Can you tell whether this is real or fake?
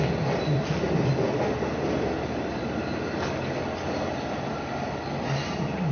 real